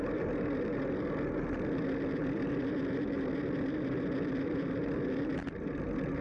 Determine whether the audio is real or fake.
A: real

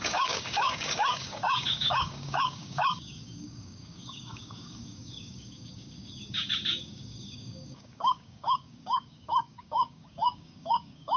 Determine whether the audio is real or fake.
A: fake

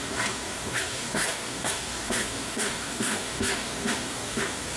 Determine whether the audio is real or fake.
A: fake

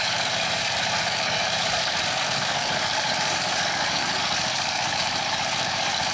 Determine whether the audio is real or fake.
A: fake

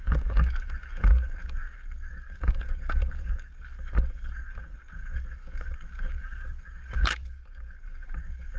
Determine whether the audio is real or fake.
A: fake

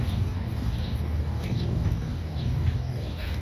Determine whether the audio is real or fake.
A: fake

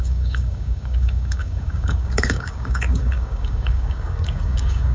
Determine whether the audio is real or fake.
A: fake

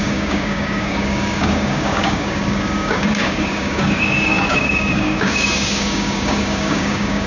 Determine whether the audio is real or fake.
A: fake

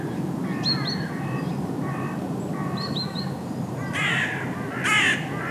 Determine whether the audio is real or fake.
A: real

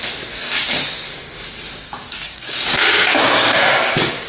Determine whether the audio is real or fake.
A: fake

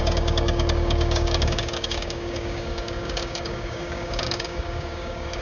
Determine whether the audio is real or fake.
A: fake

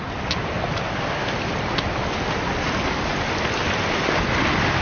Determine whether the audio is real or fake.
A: real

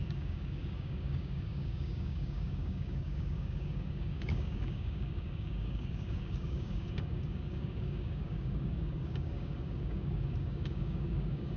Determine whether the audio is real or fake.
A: fake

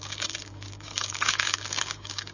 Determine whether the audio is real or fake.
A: fake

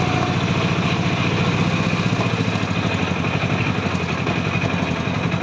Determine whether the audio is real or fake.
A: real